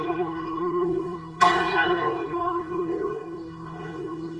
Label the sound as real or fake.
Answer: fake